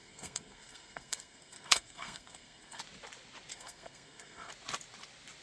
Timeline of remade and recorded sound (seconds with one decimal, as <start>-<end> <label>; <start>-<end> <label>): 0.0-2.8 remade; 2.8-3.5 recorded; 3.5-4.5 remade; 4.5-5.4 recorded